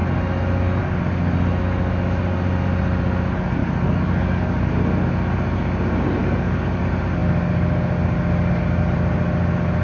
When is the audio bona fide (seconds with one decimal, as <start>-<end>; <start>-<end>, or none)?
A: 0.0-3.6; 4.7-6.2; 6.8-9.8